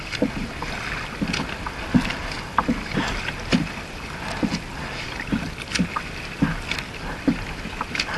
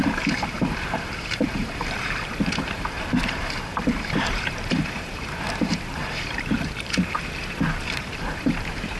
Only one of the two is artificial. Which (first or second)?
second